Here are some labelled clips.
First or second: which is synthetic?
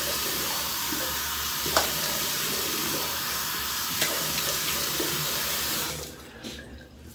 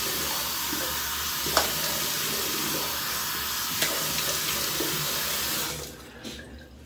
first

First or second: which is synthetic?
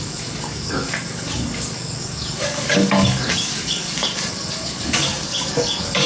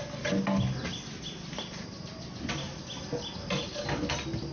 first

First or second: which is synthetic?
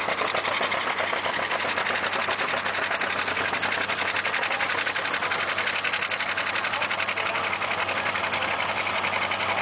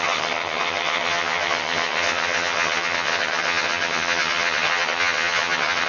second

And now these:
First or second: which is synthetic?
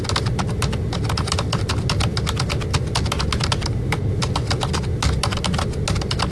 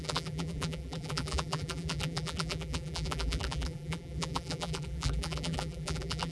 second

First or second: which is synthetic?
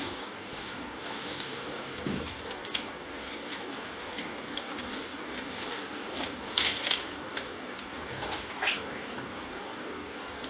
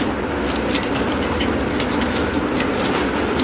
first